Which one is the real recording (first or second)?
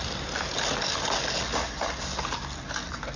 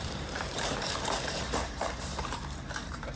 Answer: first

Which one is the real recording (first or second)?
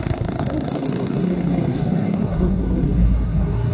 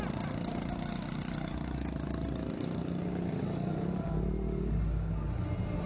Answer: second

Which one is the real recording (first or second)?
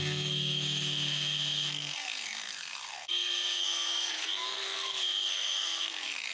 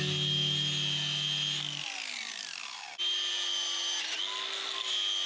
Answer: second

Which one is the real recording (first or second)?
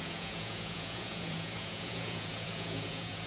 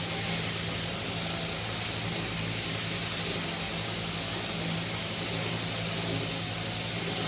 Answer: second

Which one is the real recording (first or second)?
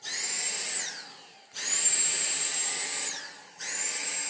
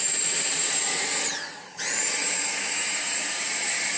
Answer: first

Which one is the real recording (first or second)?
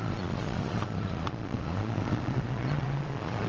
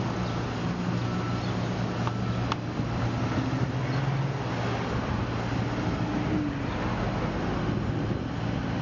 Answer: second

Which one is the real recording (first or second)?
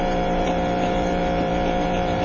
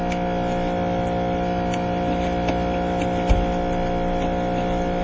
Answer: second